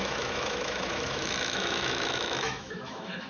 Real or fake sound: fake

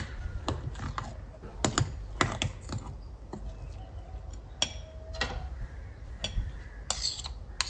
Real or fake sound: real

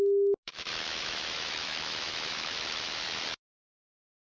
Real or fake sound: fake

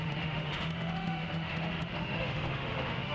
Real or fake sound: fake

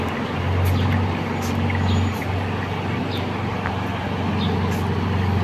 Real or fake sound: real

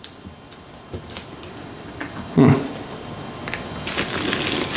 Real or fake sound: real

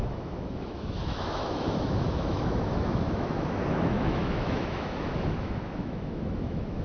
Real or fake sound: fake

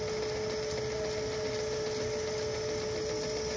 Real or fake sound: real